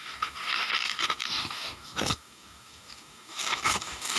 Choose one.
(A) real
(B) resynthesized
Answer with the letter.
B